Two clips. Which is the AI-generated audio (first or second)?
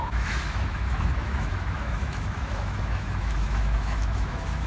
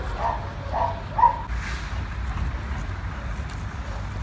first